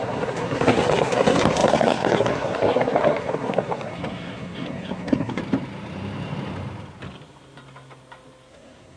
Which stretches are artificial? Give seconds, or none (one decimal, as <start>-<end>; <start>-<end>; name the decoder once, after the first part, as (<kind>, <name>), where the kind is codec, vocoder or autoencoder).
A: 0.0-5.4 (codec, SNAC); 8.5-9.0